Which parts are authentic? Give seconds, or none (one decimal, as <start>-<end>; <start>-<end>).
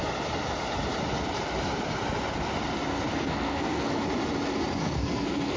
0.0-3.1; 4.0-4.8